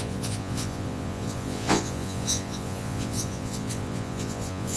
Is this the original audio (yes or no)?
no